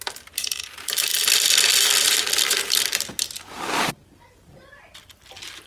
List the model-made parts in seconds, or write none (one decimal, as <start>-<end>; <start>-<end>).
none